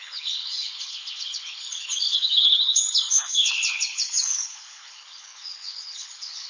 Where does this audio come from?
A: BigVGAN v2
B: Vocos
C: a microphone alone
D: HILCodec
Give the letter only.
D